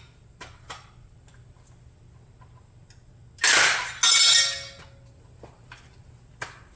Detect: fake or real real